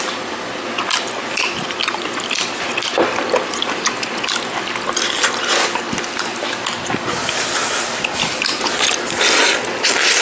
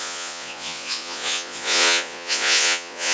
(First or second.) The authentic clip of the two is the first